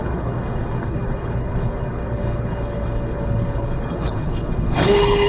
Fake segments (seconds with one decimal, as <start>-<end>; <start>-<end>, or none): 0.0-5.3